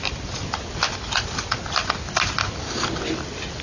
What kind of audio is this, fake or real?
real